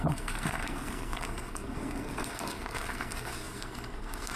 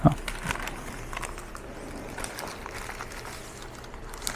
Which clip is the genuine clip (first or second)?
second